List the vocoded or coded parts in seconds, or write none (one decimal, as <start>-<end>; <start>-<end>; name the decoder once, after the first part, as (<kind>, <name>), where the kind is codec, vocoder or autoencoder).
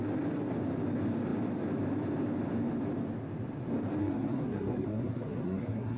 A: 4.0-6.0 (codec, SNAC)